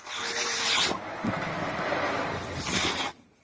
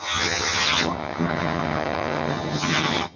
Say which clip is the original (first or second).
first